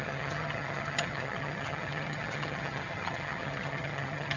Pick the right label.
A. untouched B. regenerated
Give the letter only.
B